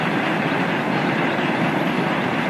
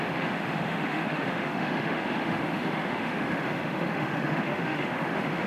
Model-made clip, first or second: second